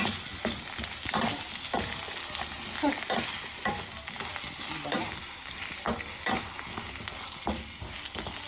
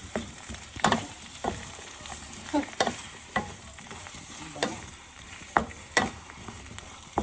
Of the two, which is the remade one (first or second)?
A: second